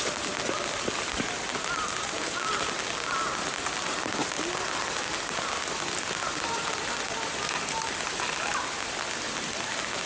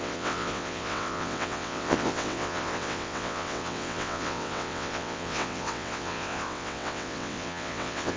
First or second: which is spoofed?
second